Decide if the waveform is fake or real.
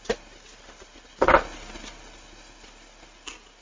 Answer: real